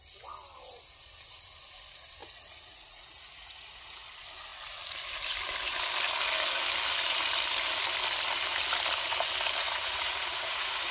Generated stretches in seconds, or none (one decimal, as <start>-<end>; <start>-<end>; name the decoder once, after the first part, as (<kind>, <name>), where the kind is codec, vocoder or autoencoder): 2.2-4.0 (vocoder, Vocos); 9.6-10.9